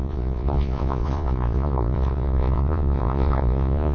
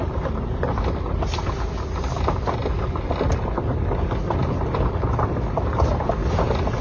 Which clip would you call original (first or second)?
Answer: second